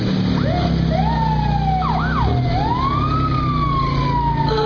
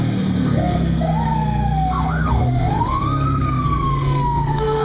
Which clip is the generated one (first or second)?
second